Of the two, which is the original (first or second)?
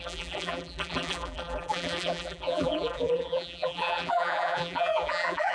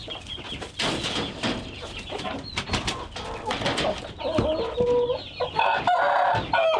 second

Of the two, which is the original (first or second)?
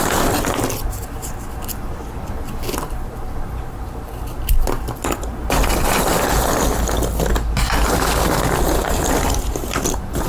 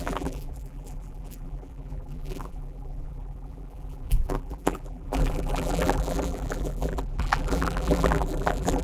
first